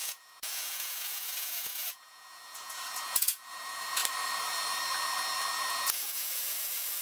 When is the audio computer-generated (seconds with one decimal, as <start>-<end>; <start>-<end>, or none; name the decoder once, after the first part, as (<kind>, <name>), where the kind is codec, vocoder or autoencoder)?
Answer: 0.0-4.0 (vocoder, Vocos); 5.7-7.0